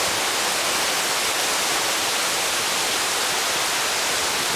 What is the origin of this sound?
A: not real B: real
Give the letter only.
B